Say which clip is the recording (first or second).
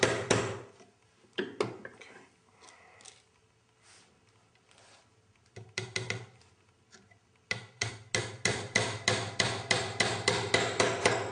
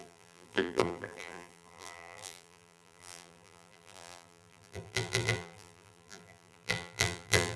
first